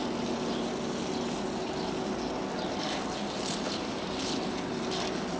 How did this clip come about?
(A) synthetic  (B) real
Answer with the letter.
B